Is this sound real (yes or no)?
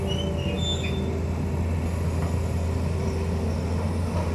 yes